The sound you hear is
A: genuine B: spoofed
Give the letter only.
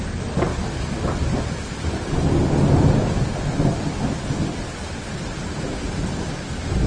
A